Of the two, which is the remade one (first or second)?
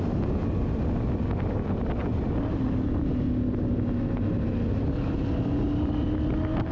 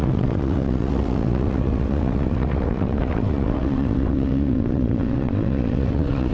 second